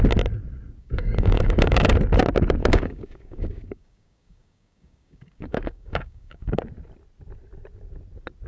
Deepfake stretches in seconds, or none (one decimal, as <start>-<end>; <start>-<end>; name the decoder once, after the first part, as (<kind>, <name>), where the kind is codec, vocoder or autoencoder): 0.8-1.9 (codec, DAC); 2.6-6.6